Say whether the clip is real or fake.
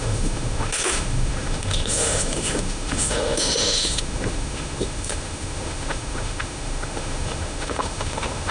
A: fake